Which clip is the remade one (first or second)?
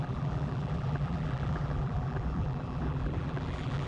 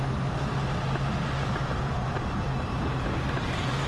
first